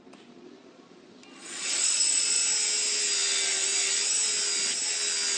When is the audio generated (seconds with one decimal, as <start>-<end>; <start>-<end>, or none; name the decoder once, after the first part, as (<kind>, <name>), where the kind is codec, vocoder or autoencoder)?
1.4-2.4 (vocoder, Vocos)